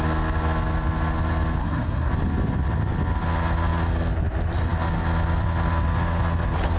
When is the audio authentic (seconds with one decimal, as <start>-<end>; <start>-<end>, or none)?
0.0-1.6; 2.1-6.8